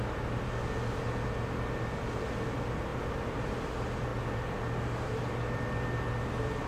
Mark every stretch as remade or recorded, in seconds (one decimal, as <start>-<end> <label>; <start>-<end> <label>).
0.0-2.9 recorded; 2.9-3.5 remade; 3.5-6.7 recorded